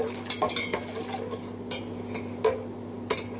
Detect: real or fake real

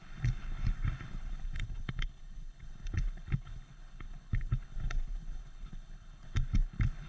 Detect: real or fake fake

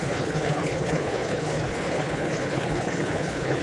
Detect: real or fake fake